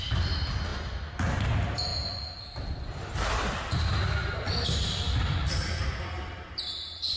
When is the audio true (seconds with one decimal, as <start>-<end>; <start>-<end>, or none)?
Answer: 0.0-7.2